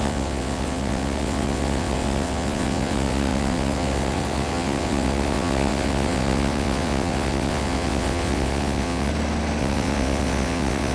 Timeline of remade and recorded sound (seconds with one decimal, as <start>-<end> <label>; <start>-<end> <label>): 0.0-9.1 remade; 9.1-9.6 recorded; 9.6-10.9 remade